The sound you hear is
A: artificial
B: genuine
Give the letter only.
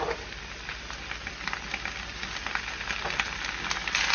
B